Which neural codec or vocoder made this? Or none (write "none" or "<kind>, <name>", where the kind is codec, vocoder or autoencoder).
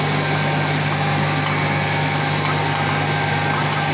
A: none